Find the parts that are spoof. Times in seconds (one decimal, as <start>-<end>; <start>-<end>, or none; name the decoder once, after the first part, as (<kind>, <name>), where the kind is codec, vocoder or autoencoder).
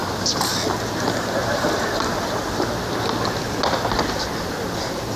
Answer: none